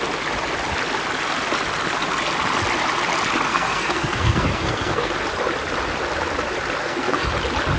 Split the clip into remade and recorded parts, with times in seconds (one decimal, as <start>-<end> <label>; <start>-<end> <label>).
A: 0.0-3.5 recorded; 3.5-5.1 remade; 5.1-6.8 recorded; 6.8-7.3 remade; 7.3-7.8 recorded